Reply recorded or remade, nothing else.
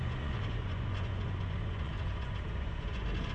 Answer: remade